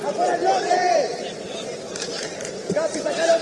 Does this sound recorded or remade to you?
remade